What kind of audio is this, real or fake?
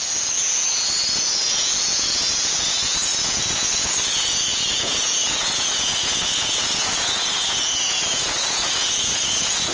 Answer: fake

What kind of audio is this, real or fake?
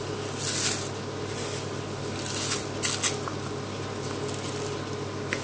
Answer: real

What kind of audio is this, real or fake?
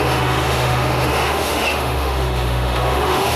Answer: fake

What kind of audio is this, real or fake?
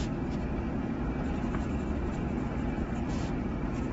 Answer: real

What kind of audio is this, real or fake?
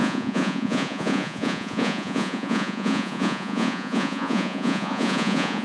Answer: fake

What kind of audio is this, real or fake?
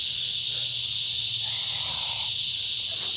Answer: real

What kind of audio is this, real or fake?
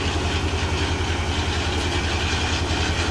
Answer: real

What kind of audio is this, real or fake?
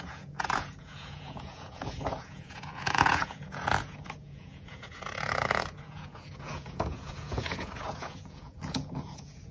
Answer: fake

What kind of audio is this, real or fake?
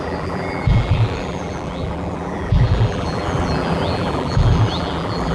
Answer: fake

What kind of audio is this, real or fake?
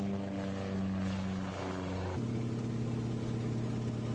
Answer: real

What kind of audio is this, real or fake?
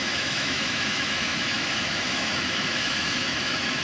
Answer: fake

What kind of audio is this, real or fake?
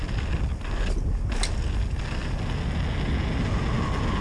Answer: real